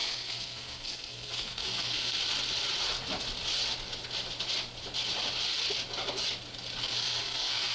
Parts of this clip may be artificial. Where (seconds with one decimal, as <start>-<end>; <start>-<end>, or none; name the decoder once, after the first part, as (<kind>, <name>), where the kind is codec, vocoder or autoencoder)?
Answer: 0.0-2.2 (codec, SNAC); 6.8-7.7

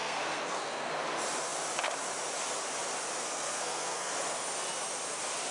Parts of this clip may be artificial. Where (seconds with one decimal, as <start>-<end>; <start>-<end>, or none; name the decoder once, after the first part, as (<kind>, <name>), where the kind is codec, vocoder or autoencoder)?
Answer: 0.0-0.9 (codec, SNAC); 3.2-4.1

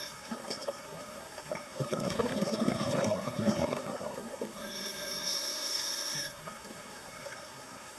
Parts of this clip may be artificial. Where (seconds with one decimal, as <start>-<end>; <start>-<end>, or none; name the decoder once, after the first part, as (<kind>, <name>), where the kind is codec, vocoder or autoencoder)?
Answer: 0.0-8.0 (codec, SNAC)